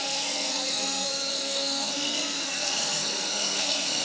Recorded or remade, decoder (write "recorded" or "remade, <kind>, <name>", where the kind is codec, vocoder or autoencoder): remade, codec, SNAC